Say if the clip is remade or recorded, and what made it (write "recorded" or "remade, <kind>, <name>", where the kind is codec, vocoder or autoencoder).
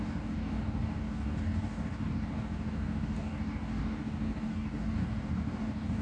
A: remade, codec, DAC